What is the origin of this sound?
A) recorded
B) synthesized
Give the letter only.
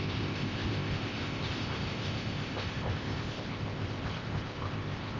B